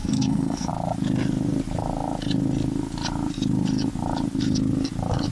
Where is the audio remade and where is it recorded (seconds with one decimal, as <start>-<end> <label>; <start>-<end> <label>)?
0.0-0.7 remade; 0.7-5.3 recorded